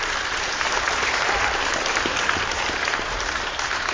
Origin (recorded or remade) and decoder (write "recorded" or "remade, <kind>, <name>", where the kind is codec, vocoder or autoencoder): remade, vocoder, BigVGAN v2